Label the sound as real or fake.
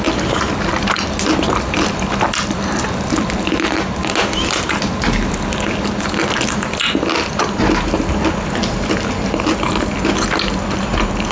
real